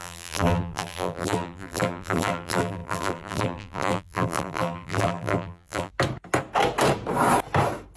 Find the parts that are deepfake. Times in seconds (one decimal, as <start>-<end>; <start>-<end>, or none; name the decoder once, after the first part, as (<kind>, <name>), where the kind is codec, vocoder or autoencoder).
0.0-5.9 (vocoder, BigVGAN v2)